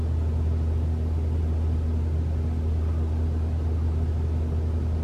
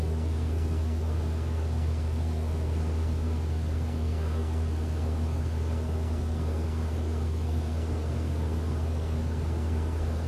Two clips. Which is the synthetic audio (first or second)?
second